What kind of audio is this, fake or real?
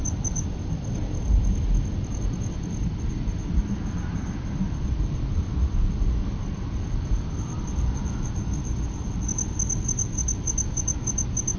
real